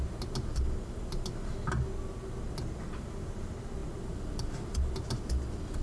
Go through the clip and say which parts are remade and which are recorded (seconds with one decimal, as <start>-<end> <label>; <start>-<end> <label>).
0.0-5.8 recorded